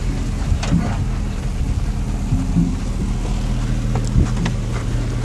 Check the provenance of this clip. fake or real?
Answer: real